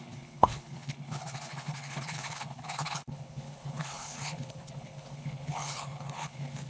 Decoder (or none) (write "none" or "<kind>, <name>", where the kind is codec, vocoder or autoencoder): codec, HILCodec